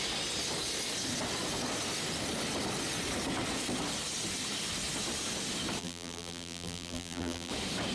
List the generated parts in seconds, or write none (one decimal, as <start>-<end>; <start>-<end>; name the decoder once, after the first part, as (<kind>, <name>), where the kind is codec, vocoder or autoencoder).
5.8-7.5 (vocoder, BigVGAN v2)

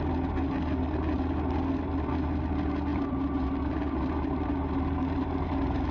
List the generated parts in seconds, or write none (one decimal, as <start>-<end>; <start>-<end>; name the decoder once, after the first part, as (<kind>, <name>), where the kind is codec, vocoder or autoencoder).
2.9-4.5 (vocoder, BigVGAN v2)